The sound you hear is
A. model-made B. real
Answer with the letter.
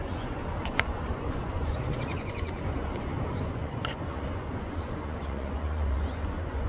A